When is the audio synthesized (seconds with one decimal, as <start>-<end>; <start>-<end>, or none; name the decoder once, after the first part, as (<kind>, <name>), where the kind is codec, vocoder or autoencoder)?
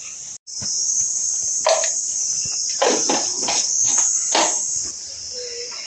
3.3-4.0 (codec, HILCodec)